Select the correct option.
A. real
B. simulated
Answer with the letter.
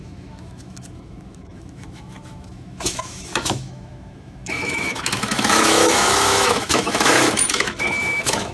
B